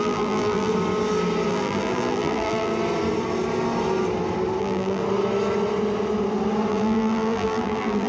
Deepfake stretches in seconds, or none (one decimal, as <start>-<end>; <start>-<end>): 0.0-0.7; 1.5-2.7; 4.6-5.0; 6.7-8.1